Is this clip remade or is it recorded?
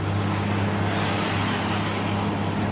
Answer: recorded